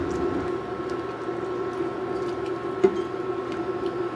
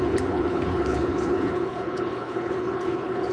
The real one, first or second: first